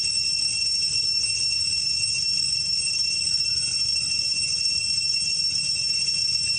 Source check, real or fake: real